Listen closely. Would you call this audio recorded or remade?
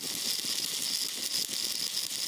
recorded